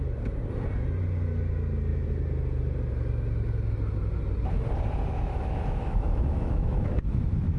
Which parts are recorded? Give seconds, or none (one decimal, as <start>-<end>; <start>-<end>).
0.0-5.1